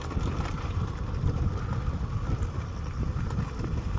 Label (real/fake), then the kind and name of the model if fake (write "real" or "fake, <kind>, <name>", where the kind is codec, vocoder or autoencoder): real